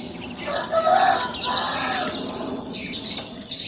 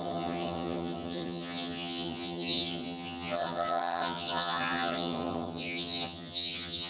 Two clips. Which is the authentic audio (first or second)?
first